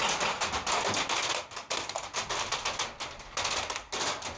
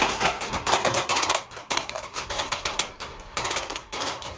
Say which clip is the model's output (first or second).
second